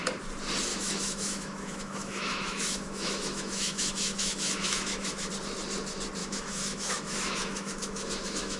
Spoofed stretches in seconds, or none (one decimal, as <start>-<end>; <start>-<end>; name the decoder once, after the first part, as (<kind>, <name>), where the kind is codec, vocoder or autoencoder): 0.7-5.3 (autoencoder, DAC-VAE); 6.2-8.6